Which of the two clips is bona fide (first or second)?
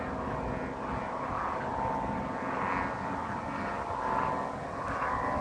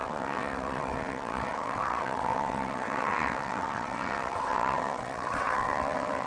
first